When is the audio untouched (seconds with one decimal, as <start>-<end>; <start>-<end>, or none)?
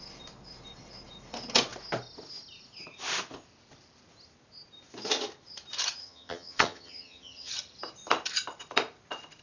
0.0-6.0; 7.5-9.4